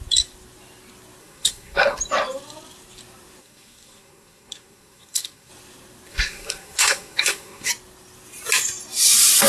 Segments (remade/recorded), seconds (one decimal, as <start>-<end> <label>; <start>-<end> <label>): 0.0-1.2 recorded; 1.2-2.0 remade; 2.0-3.4 recorded; 3.4-5.5 remade; 5.5-6.1 recorded; 6.1-7.7 remade; 7.7-9.5 recorded